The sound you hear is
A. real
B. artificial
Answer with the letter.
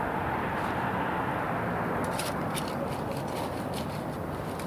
A